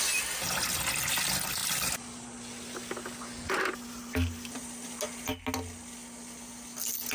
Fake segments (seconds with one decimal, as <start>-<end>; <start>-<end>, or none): none